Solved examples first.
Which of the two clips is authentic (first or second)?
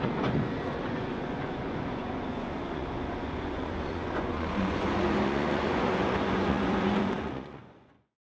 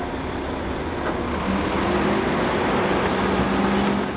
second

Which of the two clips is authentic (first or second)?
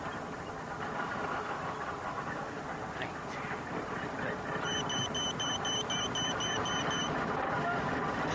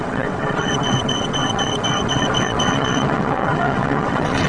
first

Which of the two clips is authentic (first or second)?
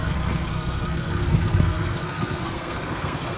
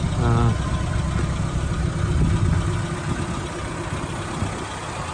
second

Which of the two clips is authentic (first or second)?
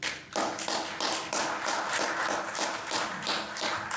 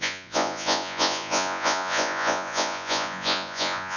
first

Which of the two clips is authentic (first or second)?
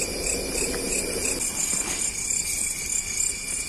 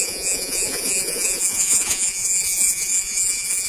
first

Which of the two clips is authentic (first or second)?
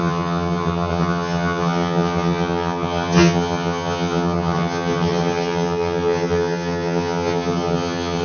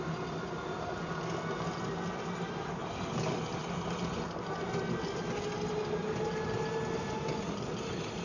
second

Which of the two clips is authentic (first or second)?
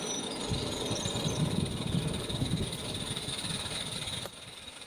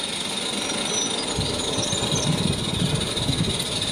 second